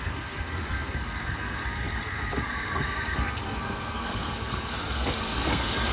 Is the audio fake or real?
fake